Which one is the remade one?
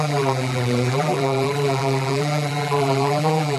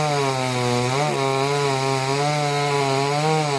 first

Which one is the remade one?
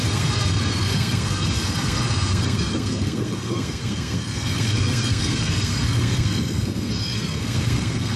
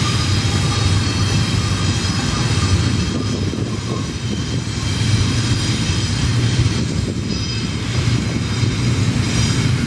first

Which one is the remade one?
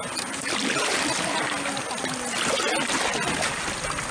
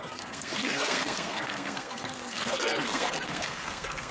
second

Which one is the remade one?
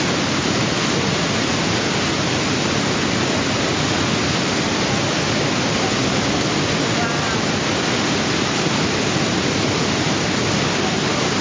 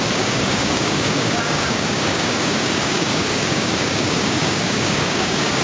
second